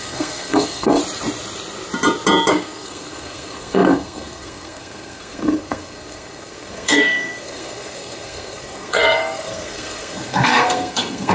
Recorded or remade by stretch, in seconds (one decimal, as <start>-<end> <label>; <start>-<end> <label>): 0.0-1.0 remade; 1.0-2.5 recorded; 2.5-11.3 remade